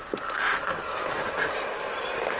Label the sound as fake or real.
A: real